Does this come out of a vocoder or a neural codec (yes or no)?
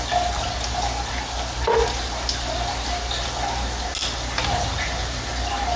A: no